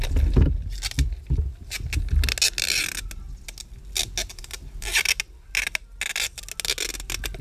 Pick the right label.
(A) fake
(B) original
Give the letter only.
B